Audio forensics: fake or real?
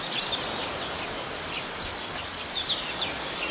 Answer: fake